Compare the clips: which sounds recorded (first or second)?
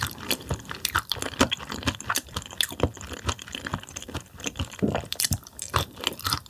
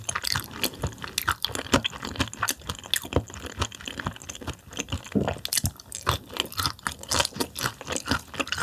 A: second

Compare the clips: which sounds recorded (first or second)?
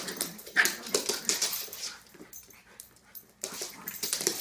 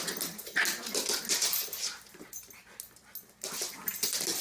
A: second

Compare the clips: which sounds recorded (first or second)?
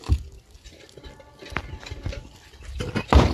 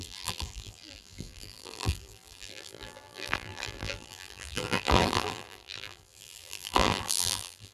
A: first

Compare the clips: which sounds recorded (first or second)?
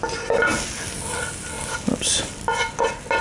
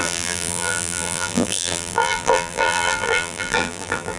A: first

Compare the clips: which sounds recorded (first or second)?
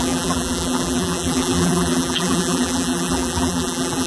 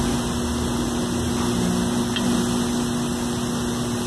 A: second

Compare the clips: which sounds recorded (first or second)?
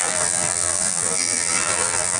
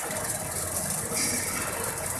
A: second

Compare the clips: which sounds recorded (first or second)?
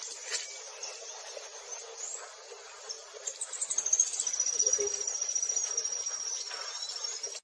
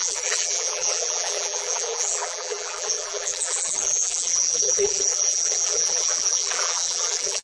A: first